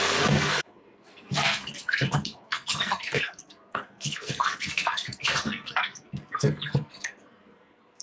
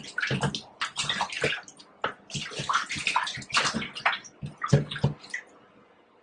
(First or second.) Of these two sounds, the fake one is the first